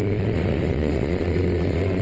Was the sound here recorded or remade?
remade